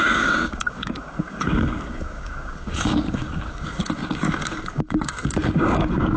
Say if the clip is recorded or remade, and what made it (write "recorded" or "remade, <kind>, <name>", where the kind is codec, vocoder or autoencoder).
remade, codec, DAC